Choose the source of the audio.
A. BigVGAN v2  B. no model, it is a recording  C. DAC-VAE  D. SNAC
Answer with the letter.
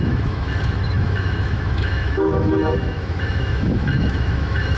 C